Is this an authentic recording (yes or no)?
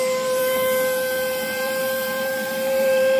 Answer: no